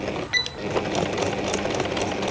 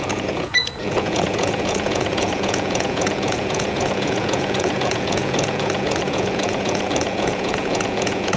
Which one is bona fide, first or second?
first